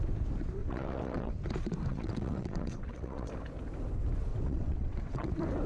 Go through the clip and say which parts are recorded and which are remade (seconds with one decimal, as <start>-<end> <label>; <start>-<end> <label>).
0.0-0.6 recorded; 0.6-1.3 remade; 1.3-1.9 recorded; 1.9-3.3 remade; 3.3-4.3 recorded; 4.3-5.3 remade; 5.3-5.7 recorded